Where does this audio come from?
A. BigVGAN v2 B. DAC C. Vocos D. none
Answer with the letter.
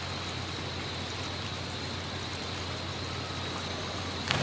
D